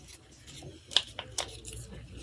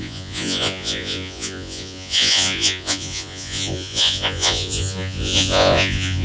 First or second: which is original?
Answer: first